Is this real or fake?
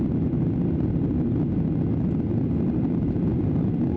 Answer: real